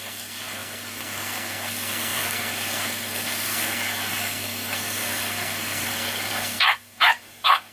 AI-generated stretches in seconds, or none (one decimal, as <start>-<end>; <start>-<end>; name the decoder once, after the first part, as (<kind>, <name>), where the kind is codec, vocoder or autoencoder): 0.0-7.7 (codec, SNAC)